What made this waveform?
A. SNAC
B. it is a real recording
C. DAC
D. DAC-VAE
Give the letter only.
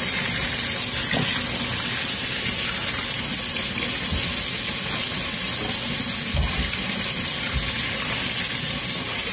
B